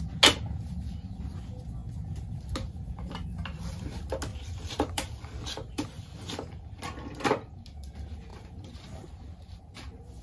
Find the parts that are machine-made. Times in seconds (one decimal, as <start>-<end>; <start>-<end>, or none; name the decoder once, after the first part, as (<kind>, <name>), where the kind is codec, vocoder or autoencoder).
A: 4.3-6.8 (vocoder, BigVGAN v2); 8.3-9.6

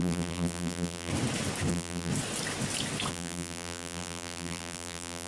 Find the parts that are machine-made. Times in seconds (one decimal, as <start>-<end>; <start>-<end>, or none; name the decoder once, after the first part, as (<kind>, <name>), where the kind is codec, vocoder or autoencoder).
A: 0.0-1.1 (vocoder, BigVGAN v2); 1.7-2.1; 3.1-5.3

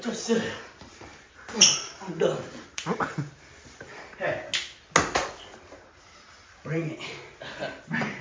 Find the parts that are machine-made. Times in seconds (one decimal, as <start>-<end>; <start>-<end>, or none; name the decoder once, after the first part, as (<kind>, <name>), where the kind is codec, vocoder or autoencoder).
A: 0.0-4.5 (vocoder, BigVGAN v2); 5.6-8.2

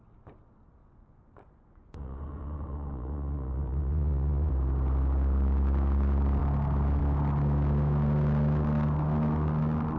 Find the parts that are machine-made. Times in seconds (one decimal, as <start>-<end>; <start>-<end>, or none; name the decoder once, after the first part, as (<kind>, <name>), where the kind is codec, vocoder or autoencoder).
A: 0.8-4.5 (vocoder, Vocos)